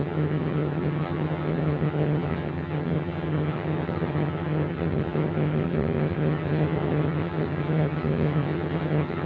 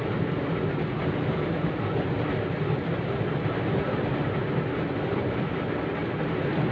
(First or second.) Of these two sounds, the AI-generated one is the first